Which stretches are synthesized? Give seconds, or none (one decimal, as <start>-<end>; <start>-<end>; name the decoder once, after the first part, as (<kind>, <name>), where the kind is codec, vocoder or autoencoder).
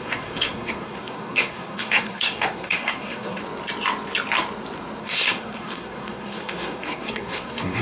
0.0-3.4 (codec, SNAC); 5.0-7.8